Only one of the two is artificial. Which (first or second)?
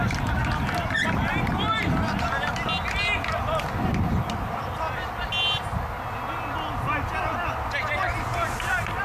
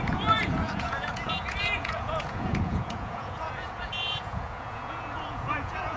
second